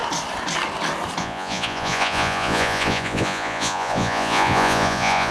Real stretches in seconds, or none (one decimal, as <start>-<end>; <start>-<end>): 0.0-1.2